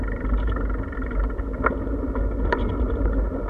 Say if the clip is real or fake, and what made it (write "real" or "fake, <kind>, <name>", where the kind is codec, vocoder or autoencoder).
real